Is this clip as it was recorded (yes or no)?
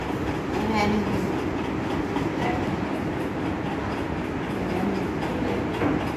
yes